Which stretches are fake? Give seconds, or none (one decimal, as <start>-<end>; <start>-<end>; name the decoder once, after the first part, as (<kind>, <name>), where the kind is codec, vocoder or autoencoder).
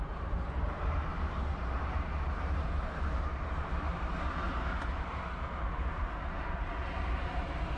0.0-7.8 (vocoder, BigVGAN v2)